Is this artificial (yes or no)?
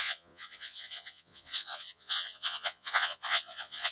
yes